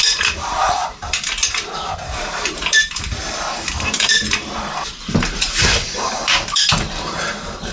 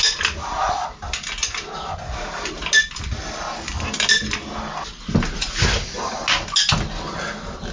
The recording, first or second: second